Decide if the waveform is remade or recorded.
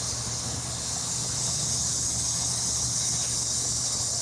remade